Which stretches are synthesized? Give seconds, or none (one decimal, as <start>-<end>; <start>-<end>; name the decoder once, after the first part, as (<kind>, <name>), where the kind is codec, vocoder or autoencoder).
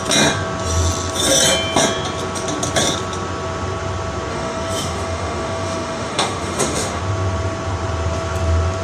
4.3-7.0 (autoencoder, DAC-VAE)